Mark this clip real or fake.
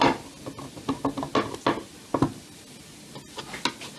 real